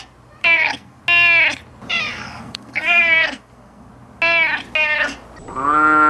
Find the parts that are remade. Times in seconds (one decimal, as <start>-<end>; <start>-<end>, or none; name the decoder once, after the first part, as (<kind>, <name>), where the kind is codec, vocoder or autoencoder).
0.4-1.0 (codec, SNAC); 2.1-3.9